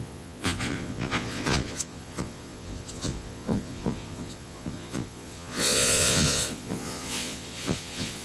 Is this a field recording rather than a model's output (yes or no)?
no